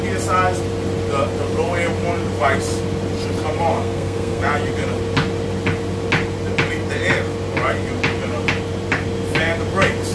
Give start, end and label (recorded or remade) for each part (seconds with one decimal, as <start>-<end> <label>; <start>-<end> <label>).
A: 0.0-3.7 recorded; 3.7-4.4 remade; 4.4-10.1 recorded